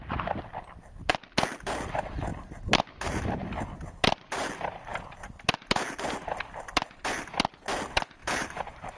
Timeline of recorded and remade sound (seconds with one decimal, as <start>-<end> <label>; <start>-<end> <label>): 0.0-2.3 recorded; 2.3-3.2 remade; 3.2-8.2 recorded; 8.2-9.0 remade